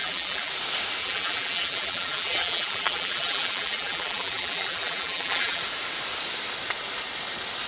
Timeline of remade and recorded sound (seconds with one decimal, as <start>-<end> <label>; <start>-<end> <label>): 0.0-0.5 remade; 0.5-1.0 recorded; 1.0-5.6 remade; 5.6-7.7 recorded